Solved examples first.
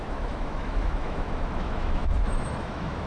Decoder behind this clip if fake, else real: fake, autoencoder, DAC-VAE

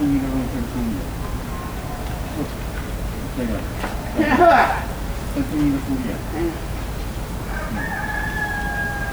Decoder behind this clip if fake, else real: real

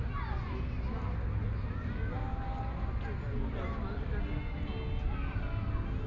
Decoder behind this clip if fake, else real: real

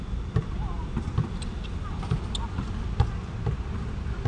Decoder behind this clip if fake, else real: real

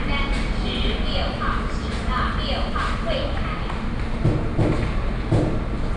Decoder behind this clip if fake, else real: real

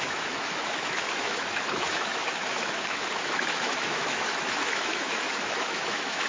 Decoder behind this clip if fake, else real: fake, autoencoder, DAC-VAE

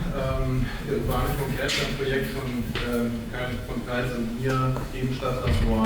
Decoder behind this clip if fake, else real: fake, autoencoder, DAC-VAE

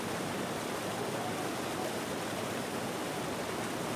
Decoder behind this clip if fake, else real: real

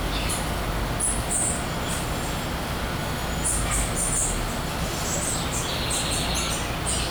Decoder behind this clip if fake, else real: real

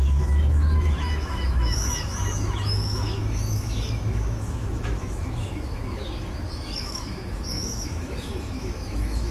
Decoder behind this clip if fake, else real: fake, autoencoder, DAC-VAE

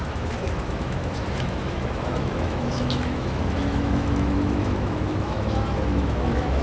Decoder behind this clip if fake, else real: fake, autoencoder, DAC-VAE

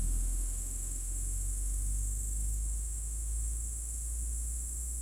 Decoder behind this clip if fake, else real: fake, autoencoder, DAC-VAE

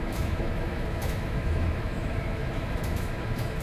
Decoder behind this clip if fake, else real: fake, autoencoder, DAC-VAE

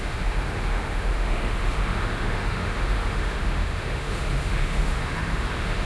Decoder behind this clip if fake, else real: fake, autoencoder, DAC-VAE